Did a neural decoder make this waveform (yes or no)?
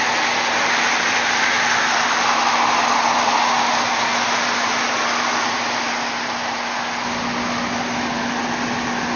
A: no